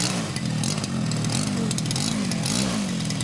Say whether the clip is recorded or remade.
recorded